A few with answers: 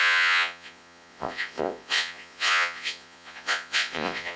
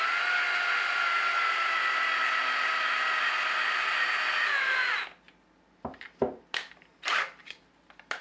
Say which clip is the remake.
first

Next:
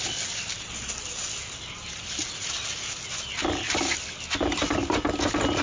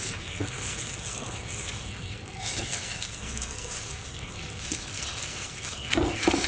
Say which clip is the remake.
second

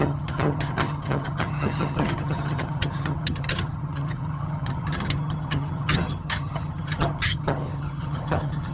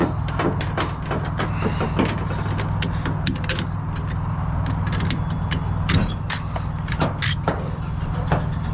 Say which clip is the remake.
first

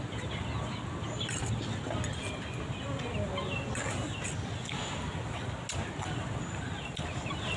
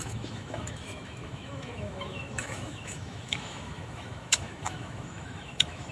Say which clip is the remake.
second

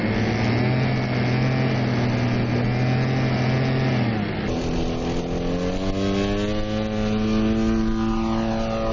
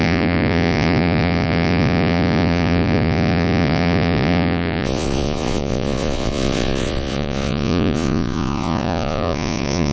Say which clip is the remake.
second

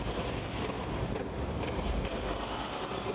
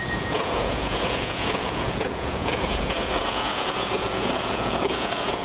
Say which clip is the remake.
second